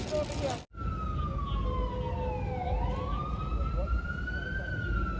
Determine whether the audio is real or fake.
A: real